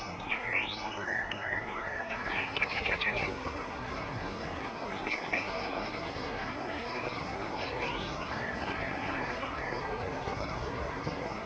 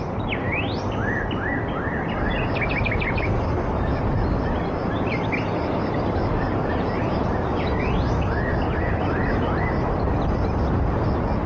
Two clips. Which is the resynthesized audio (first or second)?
first